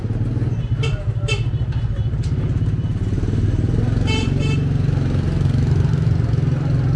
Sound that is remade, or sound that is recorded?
recorded